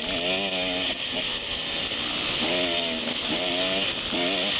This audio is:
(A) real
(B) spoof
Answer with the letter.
A